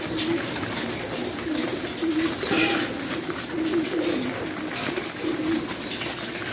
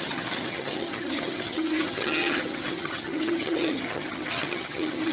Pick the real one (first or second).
first